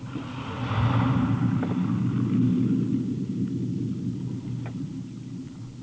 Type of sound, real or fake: real